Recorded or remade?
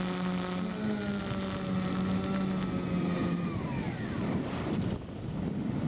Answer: recorded